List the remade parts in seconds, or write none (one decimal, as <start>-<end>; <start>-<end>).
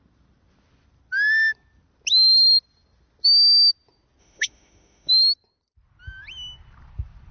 4.2-5.1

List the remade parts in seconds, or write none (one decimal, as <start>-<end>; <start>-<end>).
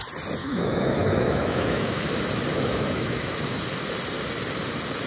0.4-2.0; 2.5-3.6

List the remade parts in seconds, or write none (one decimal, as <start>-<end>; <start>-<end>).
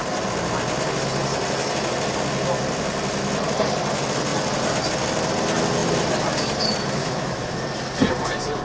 7.0-7.6